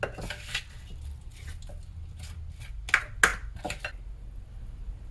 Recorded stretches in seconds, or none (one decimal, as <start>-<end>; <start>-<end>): 0.0-5.1